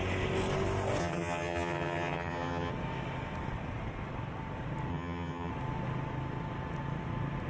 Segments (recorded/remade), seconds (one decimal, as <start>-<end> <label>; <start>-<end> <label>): 0.0-1.0 recorded; 1.0-2.7 remade; 2.7-4.9 recorded; 4.9-5.5 remade; 5.5-7.5 recorded